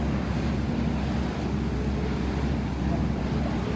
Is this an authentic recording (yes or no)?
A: yes